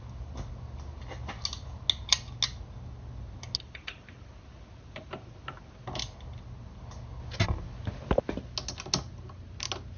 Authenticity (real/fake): real